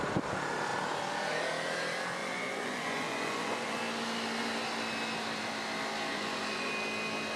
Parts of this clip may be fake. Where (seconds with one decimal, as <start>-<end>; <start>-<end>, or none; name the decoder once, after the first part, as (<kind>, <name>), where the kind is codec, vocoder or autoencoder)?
2.2-3.8 (vocoder, Vocos); 6.1-6.7